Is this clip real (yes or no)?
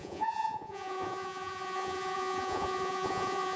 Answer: no